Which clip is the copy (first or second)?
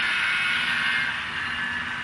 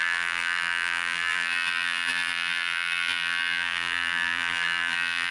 second